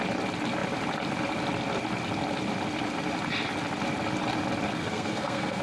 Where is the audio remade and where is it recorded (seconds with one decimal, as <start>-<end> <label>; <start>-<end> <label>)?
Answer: 0.0-4.8 recorded; 4.8-5.6 remade